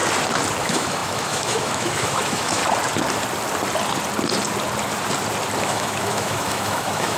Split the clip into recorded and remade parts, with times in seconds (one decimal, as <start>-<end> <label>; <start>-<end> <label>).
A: 0.0-0.6 recorded; 0.6-2.6 remade; 2.6-5.6 recorded; 5.6-7.2 remade

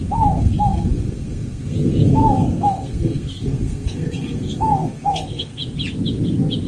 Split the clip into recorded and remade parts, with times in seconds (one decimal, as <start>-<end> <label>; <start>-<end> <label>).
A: 0.0-5.6 remade; 5.6-6.7 recorded

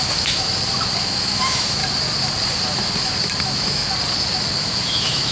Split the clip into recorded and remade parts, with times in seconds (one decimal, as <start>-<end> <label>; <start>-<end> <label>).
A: 0.0-0.5 remade; 0.5-1.0 recorded; 1.0-1.8 remade; 1.8-3.4 recorded; 3.4-3.8 remade; 3.8-4.6 recorded; 4.6-5.3 remade

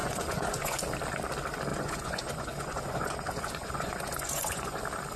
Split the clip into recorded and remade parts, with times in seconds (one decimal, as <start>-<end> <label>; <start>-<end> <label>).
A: 0.0-0.8 remade; 0.8-1.7 recorded; 1.7-4.8 remade; 4.8-5.2 recorded

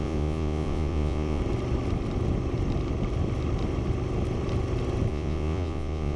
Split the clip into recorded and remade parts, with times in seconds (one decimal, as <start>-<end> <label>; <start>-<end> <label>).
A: 0.0-1.4 remade; 1.4-5.1 recorded; 5.1-6.2 remade

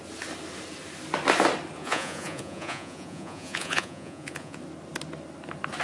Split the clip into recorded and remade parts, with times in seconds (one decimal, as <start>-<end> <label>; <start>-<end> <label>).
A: 0.0-1.8 recorded; 1.8-4.6 remade; 4.6-5.8 recorded

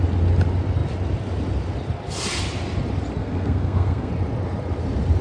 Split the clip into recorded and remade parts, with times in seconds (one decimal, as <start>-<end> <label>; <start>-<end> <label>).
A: 0.0-3.2 recorded; 3.2-4.1 remade; 4.1-5.2 recorded